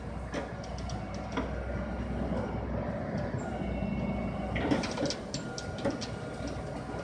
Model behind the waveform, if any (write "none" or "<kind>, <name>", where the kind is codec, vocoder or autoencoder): none